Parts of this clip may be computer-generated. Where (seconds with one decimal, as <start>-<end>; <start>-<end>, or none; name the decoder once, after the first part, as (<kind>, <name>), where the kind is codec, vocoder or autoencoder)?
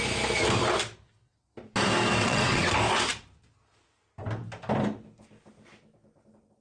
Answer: 2.2-2.7 (vocoder, WaveNeXt)